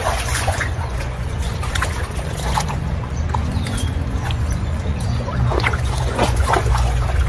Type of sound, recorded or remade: remade